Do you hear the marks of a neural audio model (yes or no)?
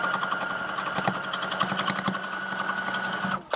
no